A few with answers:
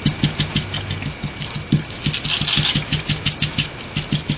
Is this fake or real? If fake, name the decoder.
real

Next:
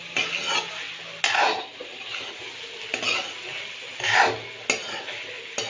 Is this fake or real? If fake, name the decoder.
real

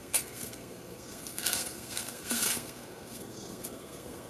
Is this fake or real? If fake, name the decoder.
fake, codec, SNAC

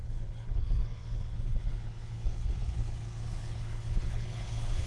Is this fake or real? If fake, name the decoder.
fake, codec, HILCodec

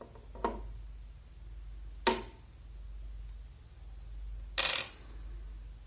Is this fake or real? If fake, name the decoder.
real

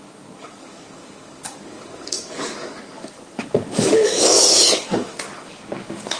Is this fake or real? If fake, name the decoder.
fake, codec, DAC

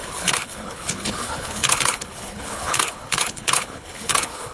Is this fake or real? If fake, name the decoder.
fake, codec, HILCodec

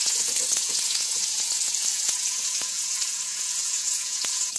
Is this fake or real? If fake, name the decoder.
fake, vocoder, Vocos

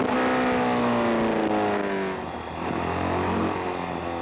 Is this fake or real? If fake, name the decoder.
real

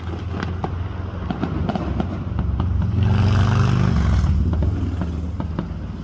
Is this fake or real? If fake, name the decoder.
real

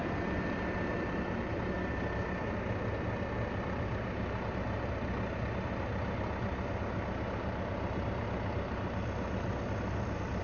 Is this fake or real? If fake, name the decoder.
real